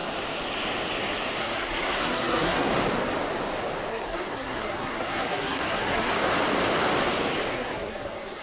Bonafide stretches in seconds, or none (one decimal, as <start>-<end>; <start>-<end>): 0.0-1.4; 2.7-3.9; 6.1-7.5